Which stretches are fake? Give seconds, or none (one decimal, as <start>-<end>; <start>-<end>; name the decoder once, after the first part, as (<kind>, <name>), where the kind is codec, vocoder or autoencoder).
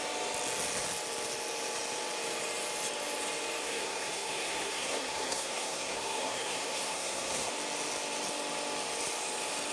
3.6-7.5 (codec, SNAC)